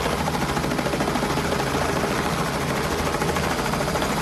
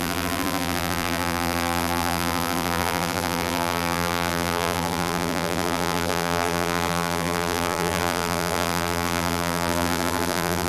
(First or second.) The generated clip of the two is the second